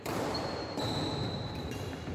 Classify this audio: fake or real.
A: fake